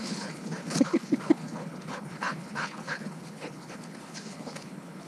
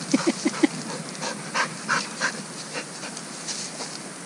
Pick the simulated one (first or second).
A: first